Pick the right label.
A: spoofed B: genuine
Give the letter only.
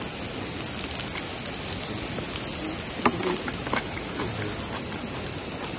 B